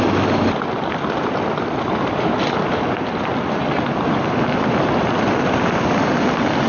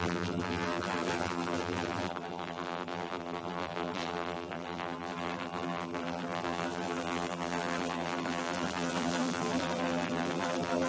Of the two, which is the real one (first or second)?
first